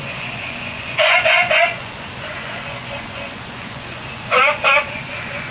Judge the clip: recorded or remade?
remade